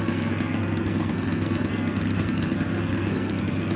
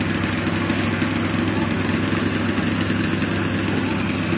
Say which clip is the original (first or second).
second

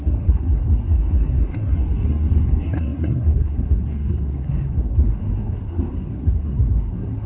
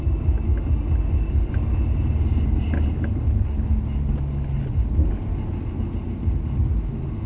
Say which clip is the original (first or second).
second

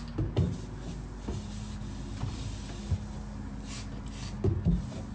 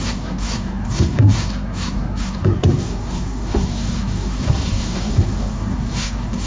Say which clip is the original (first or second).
first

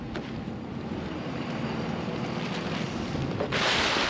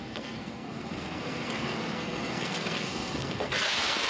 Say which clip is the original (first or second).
first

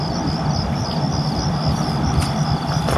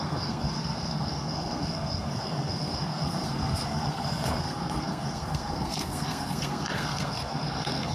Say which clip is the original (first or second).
first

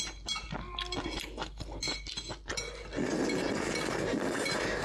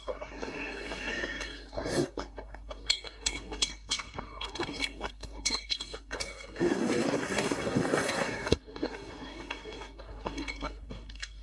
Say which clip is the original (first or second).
first